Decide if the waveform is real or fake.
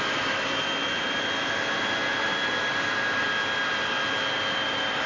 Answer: real